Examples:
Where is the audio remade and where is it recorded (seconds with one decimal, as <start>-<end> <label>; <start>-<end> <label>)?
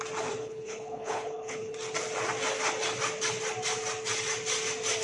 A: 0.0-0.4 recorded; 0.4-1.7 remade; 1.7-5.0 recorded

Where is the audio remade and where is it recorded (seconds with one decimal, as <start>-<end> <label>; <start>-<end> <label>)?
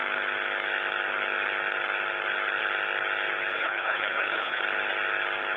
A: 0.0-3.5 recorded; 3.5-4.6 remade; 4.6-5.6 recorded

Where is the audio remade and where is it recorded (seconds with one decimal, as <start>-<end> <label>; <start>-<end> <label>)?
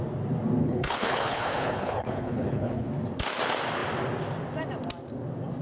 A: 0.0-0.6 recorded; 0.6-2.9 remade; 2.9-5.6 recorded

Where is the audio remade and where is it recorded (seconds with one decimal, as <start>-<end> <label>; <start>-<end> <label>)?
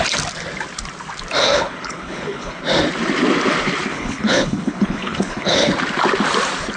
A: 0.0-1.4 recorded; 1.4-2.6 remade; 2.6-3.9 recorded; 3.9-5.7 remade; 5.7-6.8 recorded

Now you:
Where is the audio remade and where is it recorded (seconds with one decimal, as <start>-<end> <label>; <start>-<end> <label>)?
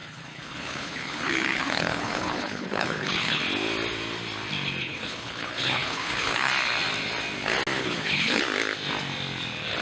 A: 0.0-3.4 remade; 3.4-4.8 recorded; 4.8-6.5 remade; 6.5-7.8 recorded; 7.8-8.4 remade; 8.4-9.8 recorded